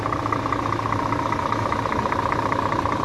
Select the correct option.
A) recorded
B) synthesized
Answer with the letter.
A